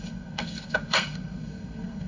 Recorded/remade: remade